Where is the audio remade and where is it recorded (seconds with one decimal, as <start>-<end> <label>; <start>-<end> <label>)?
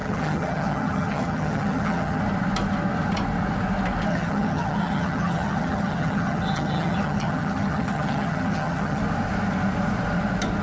0.0-2.2 remade; 2.2-4.1 recorded; 4.1-9.0 remade; 9.0-10.6 recorded